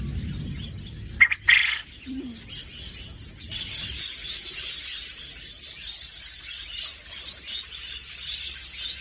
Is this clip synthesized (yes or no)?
no